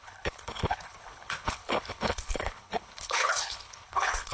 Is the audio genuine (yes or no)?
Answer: no